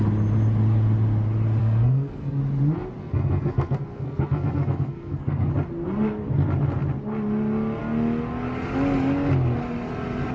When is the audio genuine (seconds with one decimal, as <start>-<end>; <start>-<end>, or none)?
0.0-1.6; 2.4-3.0; 5.5-10.3